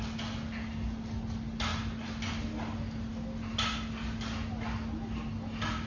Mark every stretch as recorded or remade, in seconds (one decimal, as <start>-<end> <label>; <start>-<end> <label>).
0.0-5.9 recorded